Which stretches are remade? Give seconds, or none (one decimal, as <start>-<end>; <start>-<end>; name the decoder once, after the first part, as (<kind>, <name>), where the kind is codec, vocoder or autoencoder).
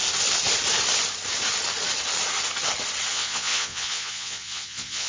3.1-5.1 (vocoder, Vocos)